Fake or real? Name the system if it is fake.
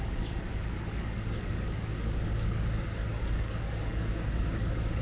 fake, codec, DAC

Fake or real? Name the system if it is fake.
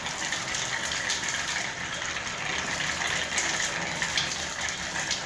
real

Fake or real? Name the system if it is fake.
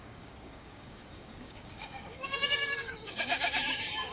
fake, codec, DAC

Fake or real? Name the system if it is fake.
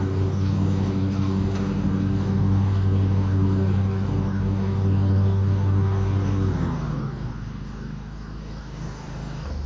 fake, codec, DAC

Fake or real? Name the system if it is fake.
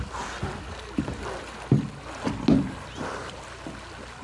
real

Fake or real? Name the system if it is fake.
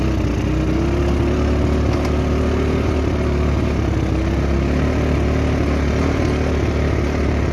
real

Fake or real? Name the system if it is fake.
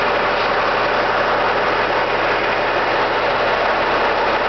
real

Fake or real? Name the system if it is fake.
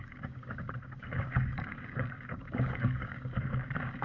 fake, codec, DAC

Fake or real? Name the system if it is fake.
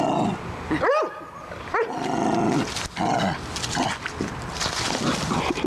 real